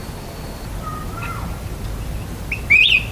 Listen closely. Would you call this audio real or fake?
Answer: real